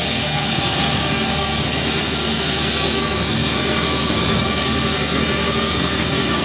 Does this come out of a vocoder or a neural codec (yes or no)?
yes